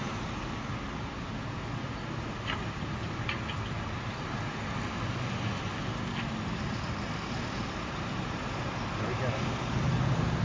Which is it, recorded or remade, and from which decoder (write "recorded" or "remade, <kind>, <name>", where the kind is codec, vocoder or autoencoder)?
recorded